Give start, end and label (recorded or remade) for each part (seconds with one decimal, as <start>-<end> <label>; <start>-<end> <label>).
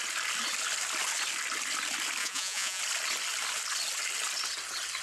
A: 0.0-2.2 recorded; 2.2-2.8 remade; 2.8-5.0 recorded